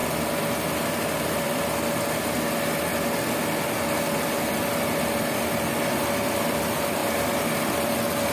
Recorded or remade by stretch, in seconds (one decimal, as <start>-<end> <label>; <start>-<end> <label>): 0.0-2.9 recorded; 2.9-3.8 remade; 3.8-7.0 recorded; 7.0-7.9 remade; 7.9-8.3 recorded